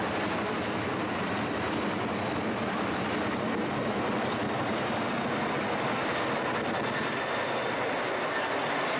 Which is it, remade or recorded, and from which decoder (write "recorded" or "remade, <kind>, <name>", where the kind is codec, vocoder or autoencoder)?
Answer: recorded